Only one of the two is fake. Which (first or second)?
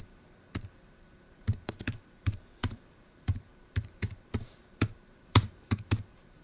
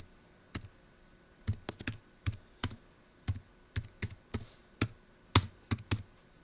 first